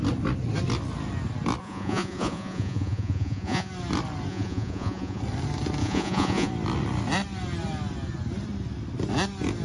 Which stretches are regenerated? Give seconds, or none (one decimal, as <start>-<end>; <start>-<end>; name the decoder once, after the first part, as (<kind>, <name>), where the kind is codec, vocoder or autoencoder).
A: 1.6-3.7 (vocoder, Vocos); 4.3-5.2; 5.8-6.5